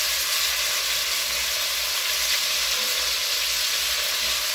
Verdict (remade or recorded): recorded